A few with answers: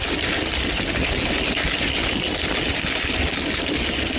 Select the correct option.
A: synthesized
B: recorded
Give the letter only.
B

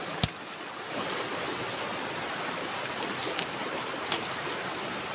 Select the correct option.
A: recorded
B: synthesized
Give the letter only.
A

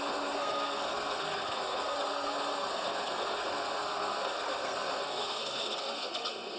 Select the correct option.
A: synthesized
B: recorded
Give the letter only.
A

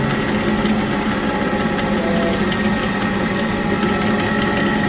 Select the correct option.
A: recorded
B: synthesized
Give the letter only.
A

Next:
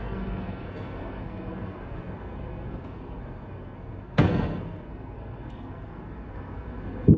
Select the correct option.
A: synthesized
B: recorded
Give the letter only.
A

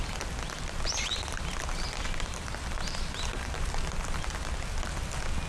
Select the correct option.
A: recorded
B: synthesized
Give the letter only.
A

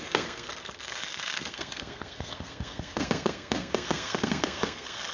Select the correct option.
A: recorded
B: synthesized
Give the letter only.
B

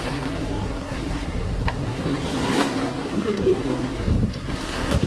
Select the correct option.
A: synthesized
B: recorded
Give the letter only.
A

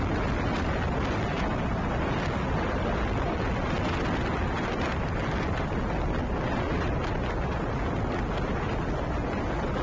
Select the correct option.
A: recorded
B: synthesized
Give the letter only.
A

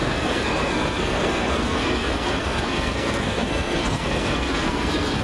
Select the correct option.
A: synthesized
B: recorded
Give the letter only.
A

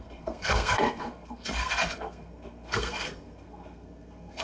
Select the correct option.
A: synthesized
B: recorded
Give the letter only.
A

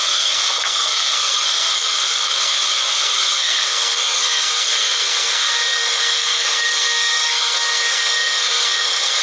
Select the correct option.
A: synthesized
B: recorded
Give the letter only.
A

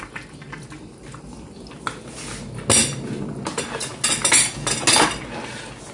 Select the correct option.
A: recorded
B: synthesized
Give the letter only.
A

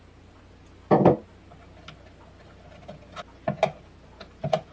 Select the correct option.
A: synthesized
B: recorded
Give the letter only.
B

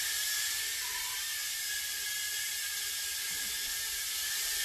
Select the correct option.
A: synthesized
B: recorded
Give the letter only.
B